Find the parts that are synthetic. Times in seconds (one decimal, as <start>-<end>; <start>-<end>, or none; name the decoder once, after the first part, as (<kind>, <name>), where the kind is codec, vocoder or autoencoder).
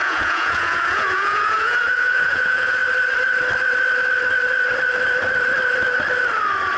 0.0-2.8 (vocoder, Vocos)